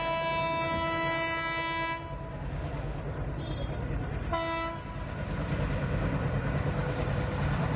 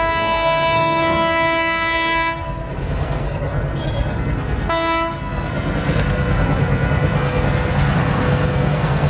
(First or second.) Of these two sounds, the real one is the first